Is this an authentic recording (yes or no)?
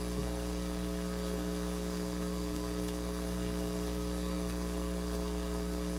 no